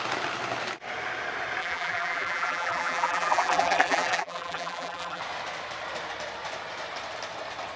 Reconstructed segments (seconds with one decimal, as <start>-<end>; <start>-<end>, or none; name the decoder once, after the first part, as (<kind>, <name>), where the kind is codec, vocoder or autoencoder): 1.6-5.2 (vocoder, BigVGAN v2)